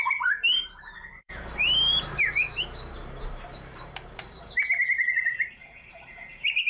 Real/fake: fake